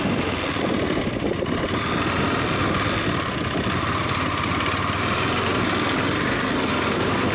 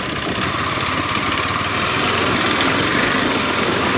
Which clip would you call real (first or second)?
first